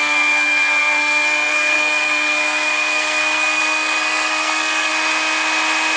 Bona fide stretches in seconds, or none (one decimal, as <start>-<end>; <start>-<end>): 4.9-6.0